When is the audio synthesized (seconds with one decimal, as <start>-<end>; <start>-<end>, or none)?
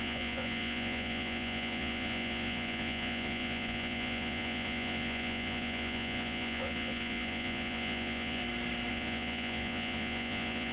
0.0-8.4; 8.9-10.7